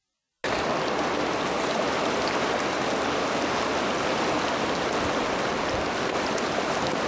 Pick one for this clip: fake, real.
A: real